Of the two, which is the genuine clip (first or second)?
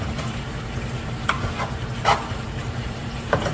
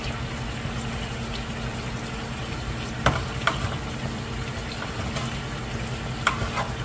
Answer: second